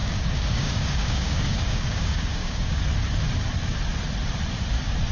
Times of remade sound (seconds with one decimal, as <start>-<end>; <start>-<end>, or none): 0.0-2.8